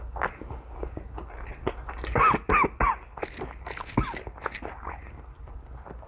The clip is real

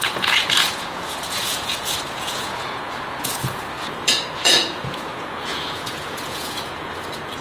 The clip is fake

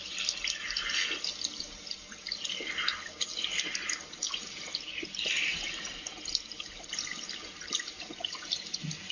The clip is real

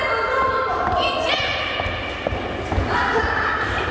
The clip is real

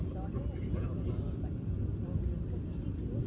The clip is fake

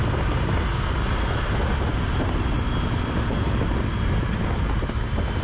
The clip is real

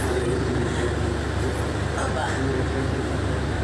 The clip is real